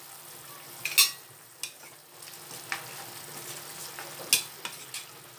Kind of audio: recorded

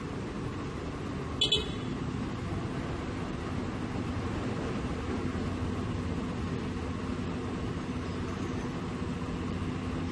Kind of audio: recorded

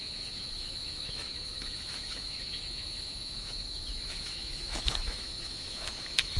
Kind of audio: remade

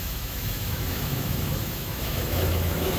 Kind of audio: remade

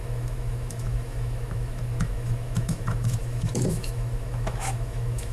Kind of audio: remade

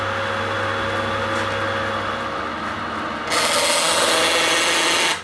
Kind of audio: recorded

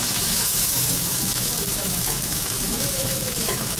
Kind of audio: remade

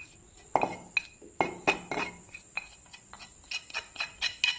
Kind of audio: recorded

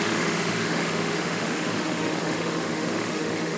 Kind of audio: remade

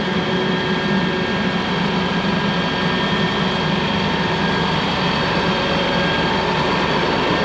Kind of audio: recorded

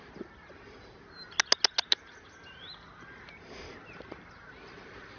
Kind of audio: recorded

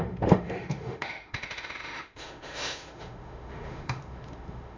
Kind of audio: remade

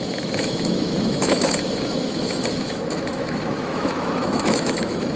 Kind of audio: remade